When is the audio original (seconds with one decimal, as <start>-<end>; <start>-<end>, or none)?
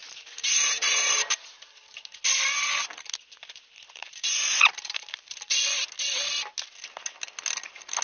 1.1-4.0; 5.9-8.0